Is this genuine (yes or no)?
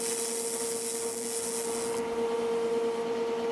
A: yes